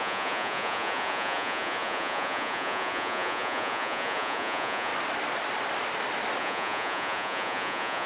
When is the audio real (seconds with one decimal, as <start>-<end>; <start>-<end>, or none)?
4.9-6.4